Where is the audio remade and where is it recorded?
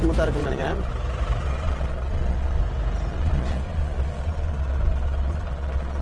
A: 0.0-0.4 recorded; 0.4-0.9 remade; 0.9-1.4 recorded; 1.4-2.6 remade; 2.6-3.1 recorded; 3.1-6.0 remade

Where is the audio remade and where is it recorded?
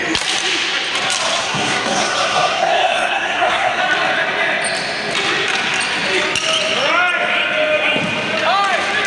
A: 0.0-1.4 recorded; 1.4-3.8 remade; 3.8-9.1 recorded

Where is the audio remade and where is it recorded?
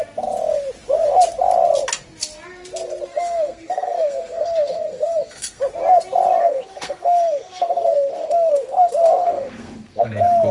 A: 0.0-3.1 recorded; 3.1-5.6 remade; 5.6-6.4 recorded; 6.4-10.1 remade; 10.1-10.5 recorded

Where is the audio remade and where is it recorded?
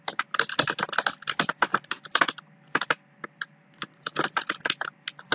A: 0.0-1.7 recorded; 1.7-2.2 remade; 2.2-3.6 recorded; 3.6-4.1 remade; 4.1-5.3 recorded